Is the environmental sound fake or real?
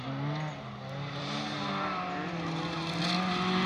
real